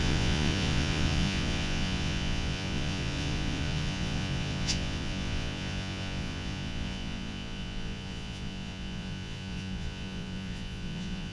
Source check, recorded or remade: remade